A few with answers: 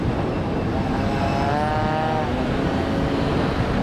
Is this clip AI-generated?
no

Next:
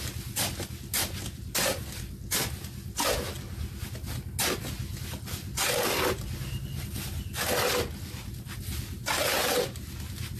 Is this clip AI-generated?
no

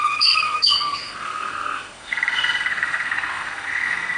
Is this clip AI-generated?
yes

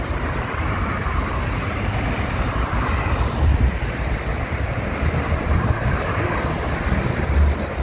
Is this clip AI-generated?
yes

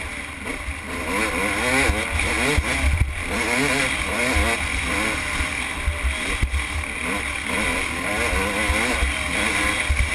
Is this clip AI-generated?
no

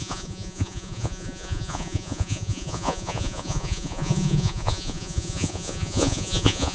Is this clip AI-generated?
yes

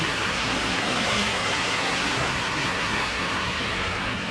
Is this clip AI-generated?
yes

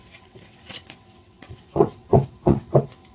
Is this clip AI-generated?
yes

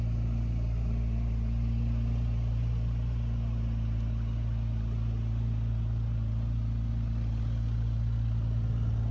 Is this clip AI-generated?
no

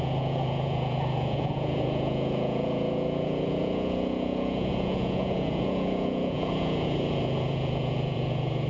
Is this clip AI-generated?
yes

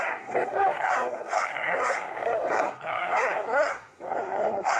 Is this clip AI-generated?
yes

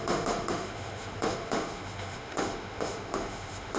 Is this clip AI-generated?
yes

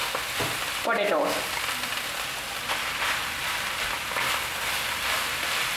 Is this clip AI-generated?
yes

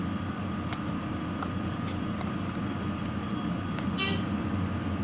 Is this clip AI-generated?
no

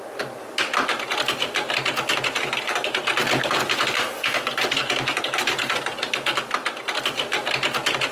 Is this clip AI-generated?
no